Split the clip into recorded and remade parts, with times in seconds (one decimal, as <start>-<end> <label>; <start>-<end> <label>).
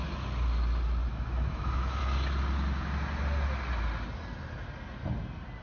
0.0-1.1 recorded; 1.1-2.0 remade; 2.0-5.6 recorded